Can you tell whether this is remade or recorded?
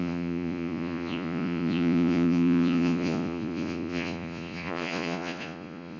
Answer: remade